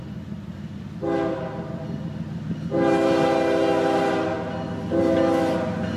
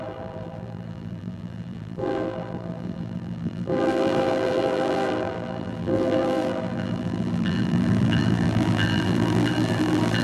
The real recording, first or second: first